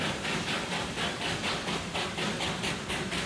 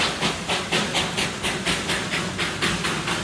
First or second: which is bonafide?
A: second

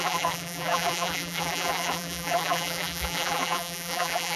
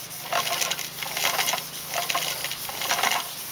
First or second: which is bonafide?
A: second